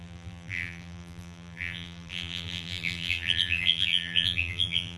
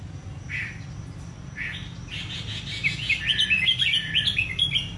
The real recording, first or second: second